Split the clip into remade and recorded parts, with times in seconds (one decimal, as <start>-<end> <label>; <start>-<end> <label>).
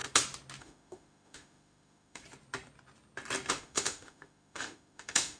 0.0-0.6 recorded; 0.6-2.2 remade; 2.2-3.5 recorded; 3.5-5.4 remade